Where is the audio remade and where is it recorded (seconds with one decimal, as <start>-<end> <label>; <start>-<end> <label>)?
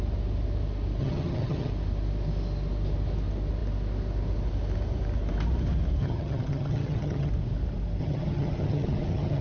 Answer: 0.0-1.0 recorded; 1.0-1.7 remade; 1.7-6.0 recorded; 6.0-7.3 remade; 7.3-8.0 recorded; 8.0-9.4 remade